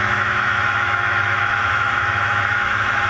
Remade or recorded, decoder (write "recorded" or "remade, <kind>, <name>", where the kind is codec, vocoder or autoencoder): remade, autoencoder, DAC-VAE